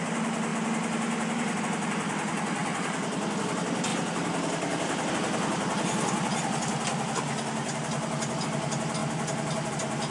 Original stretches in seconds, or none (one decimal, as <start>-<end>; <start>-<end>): 0.0-0.5; 1.6-10.1